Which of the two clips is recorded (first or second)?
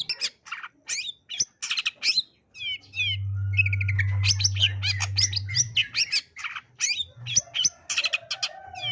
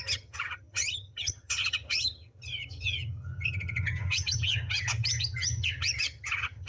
first